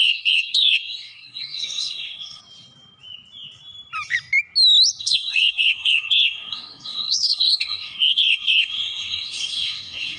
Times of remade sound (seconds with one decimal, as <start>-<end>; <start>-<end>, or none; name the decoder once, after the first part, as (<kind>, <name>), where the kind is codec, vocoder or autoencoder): 0.0-2.4 (codec, SNAC); 5.0-10.2